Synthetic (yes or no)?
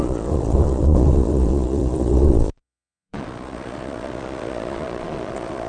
yes